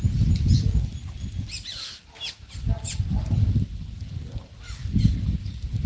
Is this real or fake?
real